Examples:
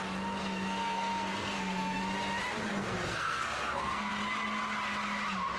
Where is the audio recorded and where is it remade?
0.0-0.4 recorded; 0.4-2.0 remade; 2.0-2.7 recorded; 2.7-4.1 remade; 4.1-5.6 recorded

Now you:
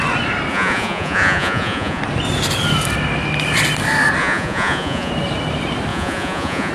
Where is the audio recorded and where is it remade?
0.0-0.5 recorded; 0.5-2.0 remade; 2.0-4.2 recorded; 4.2-5.1 remade; 5.1-5.9 recorded; 5.9-6.7 remade

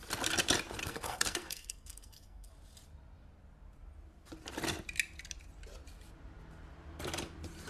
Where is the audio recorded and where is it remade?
0.0-0.8 recorded; 0.8-2.5 remade; 2.5-7.7 recorded

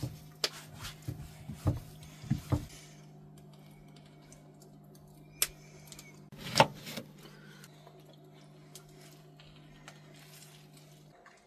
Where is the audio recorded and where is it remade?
0.0-11.5 recorded